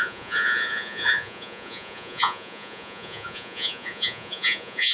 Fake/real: fake